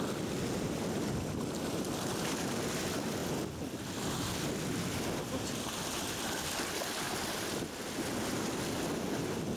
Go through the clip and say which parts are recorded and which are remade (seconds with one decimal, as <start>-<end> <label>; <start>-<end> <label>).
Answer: 0.0-9.6 recorded